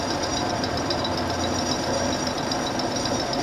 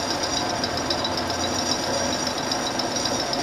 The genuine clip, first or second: second